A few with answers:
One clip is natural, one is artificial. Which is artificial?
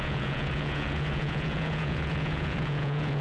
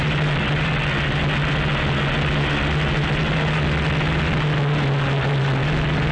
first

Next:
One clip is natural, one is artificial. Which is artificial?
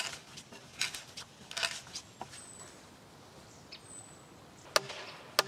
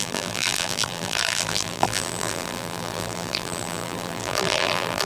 second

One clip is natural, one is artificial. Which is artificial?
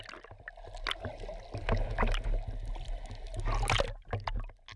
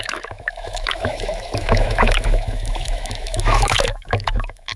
second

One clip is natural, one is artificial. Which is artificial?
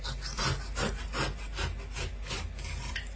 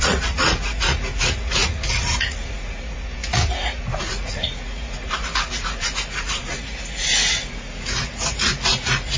second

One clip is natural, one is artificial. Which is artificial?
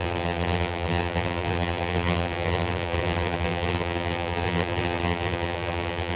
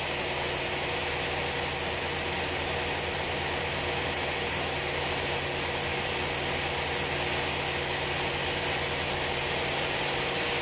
first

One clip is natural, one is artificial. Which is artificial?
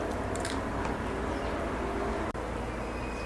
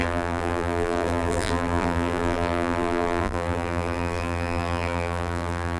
second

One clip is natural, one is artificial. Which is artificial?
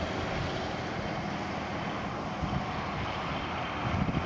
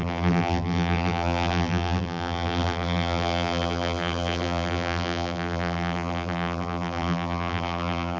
second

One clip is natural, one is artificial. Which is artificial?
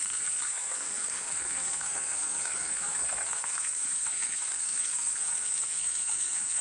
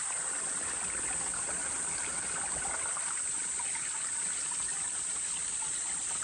first